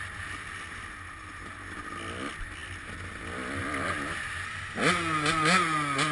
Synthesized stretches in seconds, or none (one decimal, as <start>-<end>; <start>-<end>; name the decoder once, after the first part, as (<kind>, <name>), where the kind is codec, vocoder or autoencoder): none